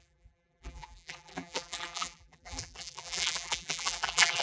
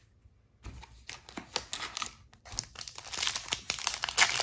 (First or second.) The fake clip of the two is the first